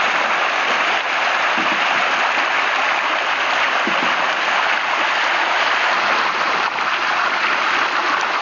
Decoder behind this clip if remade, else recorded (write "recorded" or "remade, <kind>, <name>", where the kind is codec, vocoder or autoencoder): recorded